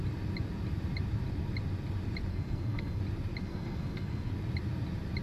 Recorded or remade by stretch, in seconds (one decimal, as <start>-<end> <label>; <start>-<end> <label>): 0.0-2.3 recorded; 2.3-3.0 remade; 3.0-3.4 recorded; 3.4-4.3 remade; 4.3-5.2 recorded